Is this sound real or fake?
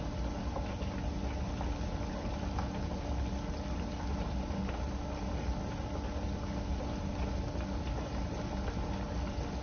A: real